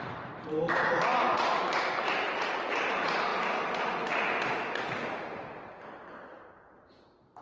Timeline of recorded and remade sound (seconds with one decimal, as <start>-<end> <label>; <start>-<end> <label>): 0.0-3.3 remade; 3.3-5.2 recorded; 5.2-7.4 remade